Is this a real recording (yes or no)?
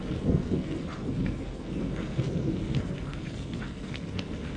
no